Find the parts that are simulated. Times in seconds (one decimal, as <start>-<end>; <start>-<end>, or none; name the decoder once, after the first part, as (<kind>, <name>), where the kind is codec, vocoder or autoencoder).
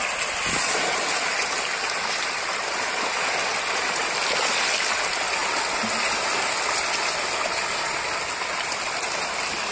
none